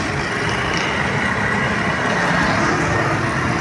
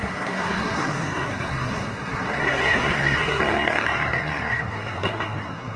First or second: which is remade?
second